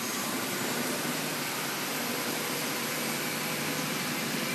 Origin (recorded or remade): remade